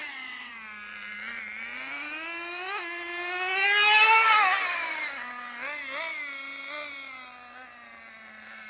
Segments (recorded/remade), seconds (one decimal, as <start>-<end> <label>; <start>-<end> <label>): 0.0-0.5 remade; 0.5-8.7 recorded